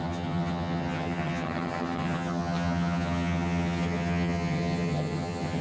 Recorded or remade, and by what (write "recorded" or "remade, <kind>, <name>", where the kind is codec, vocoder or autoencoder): remade, vocoder, HiFi-GAN